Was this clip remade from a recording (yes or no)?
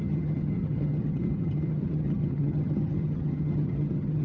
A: yes